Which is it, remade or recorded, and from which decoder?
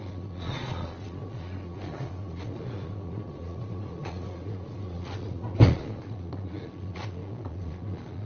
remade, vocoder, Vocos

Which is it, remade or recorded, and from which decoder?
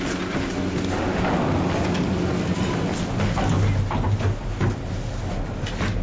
recorded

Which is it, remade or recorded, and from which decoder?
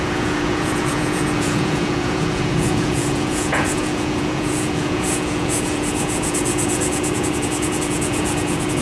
remade, vocoder, Vocos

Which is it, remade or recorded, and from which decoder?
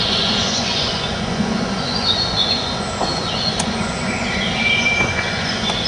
remade, vocoder, Vocos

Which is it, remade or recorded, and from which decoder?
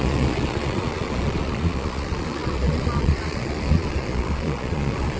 remade, vocoder, Vocos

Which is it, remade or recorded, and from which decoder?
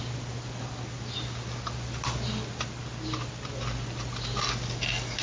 recorded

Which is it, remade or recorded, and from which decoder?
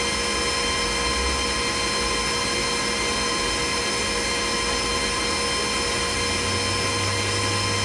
recorded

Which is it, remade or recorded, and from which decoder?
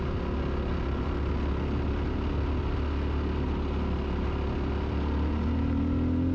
recorded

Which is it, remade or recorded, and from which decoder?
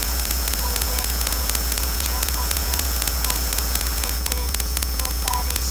remade, vocoder, Vocos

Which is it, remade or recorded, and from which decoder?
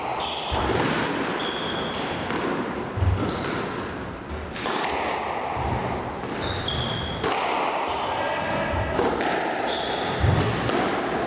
recorded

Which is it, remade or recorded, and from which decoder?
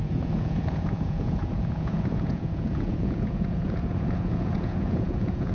remade, vocoder, Vocos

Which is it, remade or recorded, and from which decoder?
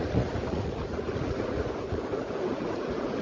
remade, vocoder, Vocos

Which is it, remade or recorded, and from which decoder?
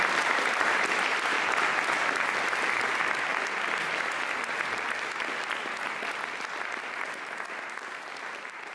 recorded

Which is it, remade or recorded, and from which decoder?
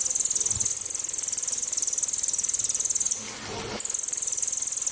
recorded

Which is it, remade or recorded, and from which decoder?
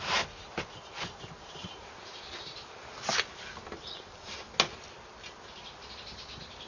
recorded